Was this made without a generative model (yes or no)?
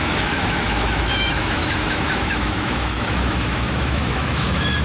no